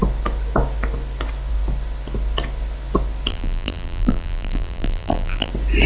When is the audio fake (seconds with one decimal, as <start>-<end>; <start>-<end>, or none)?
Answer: 3.3-5.5